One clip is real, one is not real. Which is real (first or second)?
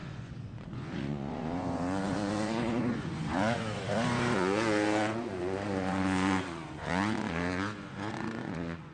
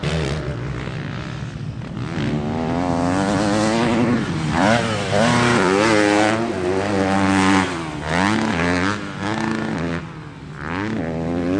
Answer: second